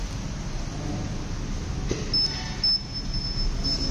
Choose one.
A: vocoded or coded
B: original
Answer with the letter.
B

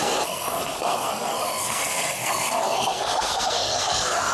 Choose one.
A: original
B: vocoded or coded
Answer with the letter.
B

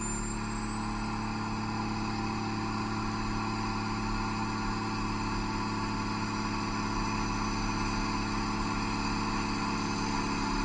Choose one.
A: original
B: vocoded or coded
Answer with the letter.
A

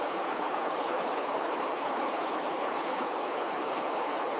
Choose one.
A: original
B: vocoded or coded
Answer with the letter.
B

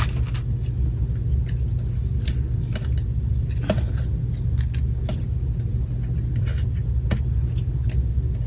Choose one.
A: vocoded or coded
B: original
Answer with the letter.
B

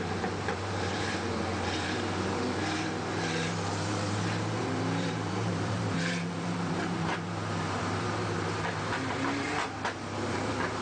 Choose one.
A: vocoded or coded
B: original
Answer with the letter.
A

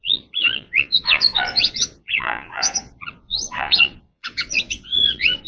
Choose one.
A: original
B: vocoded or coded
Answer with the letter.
B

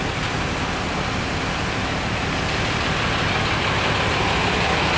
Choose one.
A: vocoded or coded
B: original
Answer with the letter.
B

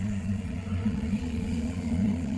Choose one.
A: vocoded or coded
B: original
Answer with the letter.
A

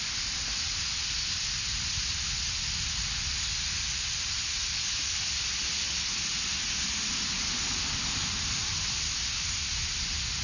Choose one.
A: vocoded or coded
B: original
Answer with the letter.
B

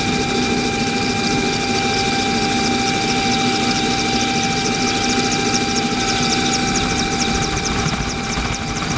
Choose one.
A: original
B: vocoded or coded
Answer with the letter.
A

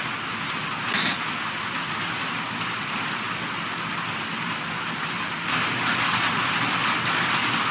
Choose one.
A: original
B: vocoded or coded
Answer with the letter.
A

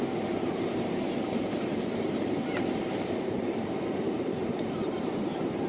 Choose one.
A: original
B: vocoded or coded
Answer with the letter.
B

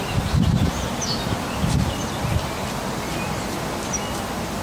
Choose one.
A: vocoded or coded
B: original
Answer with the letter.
B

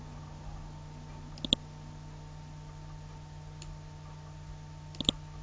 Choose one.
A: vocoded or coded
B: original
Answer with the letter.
B